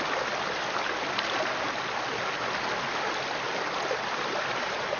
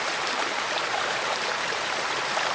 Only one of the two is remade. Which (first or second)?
second